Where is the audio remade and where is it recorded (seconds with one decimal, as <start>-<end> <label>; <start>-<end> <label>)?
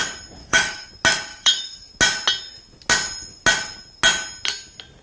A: 0.0-0.4 recorded; 0.4-0.9 remade; 0.9-1.3 recorded; 1.3-1.9 remade; 1.9-5.0 recorded